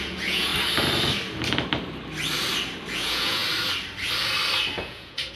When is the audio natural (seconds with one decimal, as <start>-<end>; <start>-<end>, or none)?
0.5-2.9; 3.4-4.8